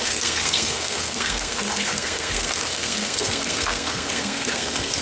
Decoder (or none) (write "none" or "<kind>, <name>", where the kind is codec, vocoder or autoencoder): codec, SNAC